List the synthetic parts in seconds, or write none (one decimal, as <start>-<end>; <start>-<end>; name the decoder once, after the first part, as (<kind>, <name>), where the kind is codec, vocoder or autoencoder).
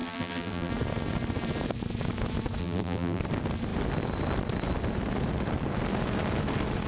0.0-0.7 (vocoder, BigVGAN v2); 2.6-3.2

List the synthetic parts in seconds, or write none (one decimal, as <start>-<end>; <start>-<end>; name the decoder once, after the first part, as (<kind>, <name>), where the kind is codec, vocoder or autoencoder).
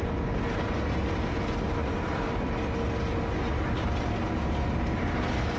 none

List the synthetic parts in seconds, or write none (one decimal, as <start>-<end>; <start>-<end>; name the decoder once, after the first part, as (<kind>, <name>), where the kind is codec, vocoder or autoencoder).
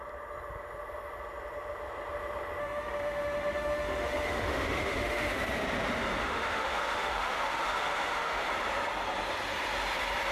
2.6-5.4 (autoencoder, DAC-VAE); 6.2-8.5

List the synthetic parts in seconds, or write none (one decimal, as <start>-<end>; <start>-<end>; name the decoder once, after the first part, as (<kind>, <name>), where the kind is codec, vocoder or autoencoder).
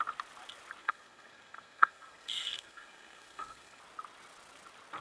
0.8-3.8 (codec, SNAC)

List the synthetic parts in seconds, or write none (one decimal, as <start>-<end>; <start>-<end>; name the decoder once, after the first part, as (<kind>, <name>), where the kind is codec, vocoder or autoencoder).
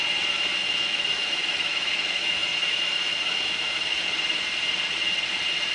0.6-4.0 (autoencoder, DAC-VAE)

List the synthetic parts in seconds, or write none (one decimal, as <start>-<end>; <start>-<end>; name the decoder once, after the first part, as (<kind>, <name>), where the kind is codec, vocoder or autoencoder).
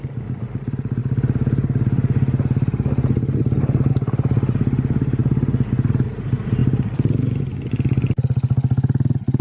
none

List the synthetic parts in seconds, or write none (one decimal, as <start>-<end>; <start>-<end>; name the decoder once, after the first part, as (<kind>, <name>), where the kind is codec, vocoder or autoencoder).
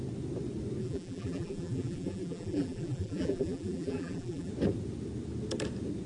0.8-4.5 (vocoder, BigVGAN v2)